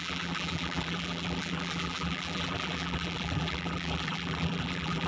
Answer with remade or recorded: remade